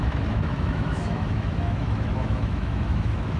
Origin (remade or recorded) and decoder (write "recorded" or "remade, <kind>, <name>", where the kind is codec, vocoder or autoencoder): remade, autoencoder, DAC-VAE